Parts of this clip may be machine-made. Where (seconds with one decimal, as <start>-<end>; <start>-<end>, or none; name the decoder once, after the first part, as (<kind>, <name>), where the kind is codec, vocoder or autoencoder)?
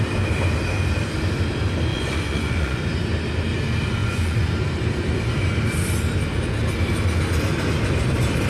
1.9-2.8 (vocoder, Vocos); 4.0-4.5